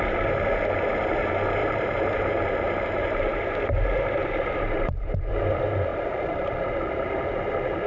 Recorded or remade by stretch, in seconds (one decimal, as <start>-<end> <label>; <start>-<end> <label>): 0.0-1.6 recorded; 1.6-2.3 remade; 2.3-4.2 recorded; 4.2-5.3 remade; 5.3-5.9 recorded; 5.9-6.7 remade; 6.7-7.9 recorded